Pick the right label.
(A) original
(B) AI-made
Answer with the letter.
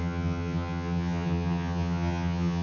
B